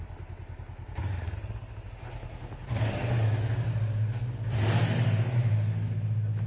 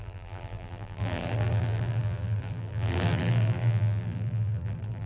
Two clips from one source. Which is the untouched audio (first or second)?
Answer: first